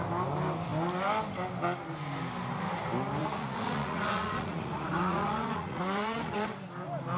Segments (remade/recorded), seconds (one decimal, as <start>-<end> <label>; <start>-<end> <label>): 0.0-3.2 recorded; 3.2-6.5 remade; 6.5-7.2 recorded